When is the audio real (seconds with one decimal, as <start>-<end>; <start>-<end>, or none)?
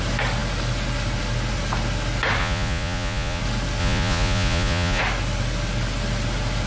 0.0-2.4; 3.4-3.8; 5.0-6.7